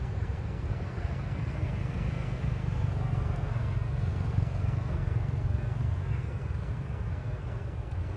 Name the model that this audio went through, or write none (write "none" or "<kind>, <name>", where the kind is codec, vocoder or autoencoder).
codec, SNAC